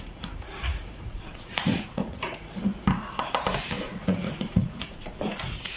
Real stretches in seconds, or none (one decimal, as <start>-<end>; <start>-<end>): 2.6-3.8